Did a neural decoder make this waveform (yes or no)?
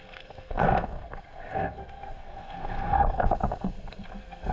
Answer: yes